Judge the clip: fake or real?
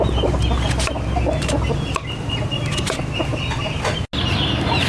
real